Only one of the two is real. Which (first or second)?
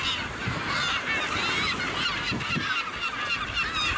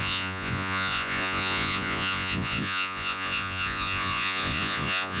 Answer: first